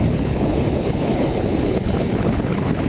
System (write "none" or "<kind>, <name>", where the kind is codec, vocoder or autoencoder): codec, HILCodec